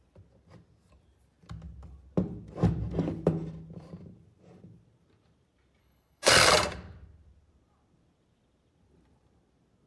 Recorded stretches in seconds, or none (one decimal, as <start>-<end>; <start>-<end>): 0.0-5.8; 6.3-9.9